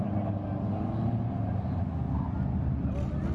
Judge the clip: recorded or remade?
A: recorded